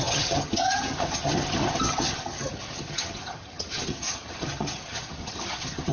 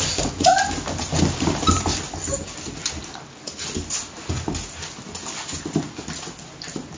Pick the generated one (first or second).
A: first